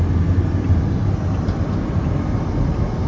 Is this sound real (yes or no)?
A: yes